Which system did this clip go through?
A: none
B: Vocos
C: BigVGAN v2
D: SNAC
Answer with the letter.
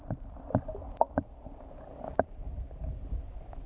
A